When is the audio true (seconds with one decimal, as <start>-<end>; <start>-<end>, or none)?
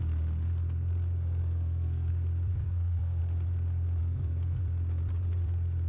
0.0-1.4; 2.1-2.5; 3.2-4.0; 4.6-5.9